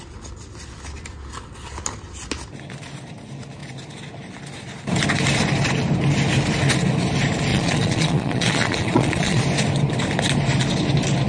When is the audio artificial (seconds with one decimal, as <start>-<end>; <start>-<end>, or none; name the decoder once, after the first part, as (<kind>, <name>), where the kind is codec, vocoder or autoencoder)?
7.5-9.4 (vocoder, Vocos)